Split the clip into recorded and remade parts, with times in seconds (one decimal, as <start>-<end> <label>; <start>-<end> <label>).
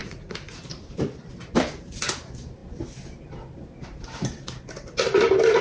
0.0-0.6 remade; 0.6-5.6 recorded